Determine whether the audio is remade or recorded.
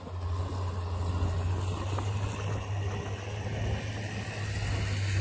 recorded